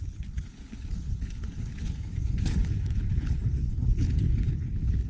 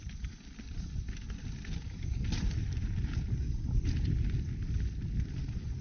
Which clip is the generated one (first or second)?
first